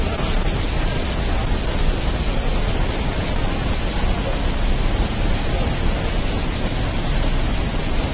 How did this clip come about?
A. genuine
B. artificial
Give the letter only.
A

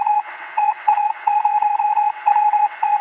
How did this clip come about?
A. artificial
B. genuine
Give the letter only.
A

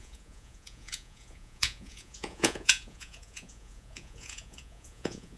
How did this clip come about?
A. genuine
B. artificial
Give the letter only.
B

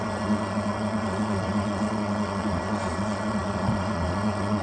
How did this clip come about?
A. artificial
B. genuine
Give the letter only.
A